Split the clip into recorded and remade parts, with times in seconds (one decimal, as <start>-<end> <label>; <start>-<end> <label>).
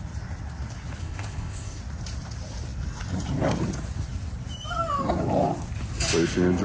0.0-1.0 recorded; 1.0-1.8 remade; 1.8-6.6 recorded